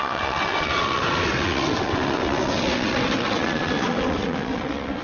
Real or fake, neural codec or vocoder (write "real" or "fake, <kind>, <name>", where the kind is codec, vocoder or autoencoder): fake, vocoder, WaveNeXt